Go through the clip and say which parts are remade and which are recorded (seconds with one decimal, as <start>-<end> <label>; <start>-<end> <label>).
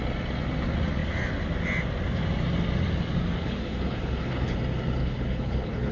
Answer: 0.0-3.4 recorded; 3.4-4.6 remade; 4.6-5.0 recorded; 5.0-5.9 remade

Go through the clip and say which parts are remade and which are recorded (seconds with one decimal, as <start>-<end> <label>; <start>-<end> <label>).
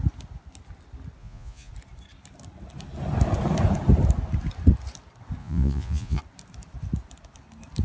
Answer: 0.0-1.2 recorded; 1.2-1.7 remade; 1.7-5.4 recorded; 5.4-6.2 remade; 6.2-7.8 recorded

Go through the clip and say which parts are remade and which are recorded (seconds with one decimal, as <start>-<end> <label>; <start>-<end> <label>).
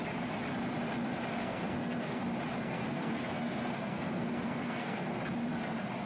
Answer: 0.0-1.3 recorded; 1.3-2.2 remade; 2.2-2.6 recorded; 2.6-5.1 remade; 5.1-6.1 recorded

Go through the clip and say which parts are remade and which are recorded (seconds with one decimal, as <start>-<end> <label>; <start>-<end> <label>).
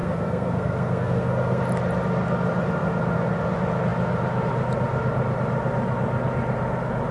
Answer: 0.0-1.6 remade; 1.6-7.1 recorded